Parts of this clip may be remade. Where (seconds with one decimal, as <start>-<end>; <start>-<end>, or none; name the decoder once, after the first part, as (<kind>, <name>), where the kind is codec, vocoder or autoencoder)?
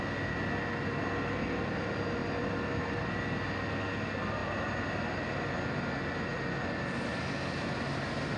none